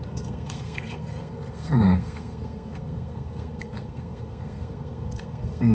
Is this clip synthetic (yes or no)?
yes